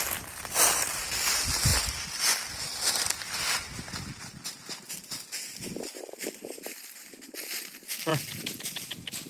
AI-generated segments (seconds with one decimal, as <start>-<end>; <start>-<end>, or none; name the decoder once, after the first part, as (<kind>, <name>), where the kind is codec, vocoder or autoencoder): none